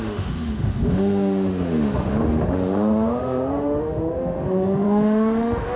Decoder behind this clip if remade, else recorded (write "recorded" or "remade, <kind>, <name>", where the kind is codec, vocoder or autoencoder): remade, autoencoder, DAC-VAE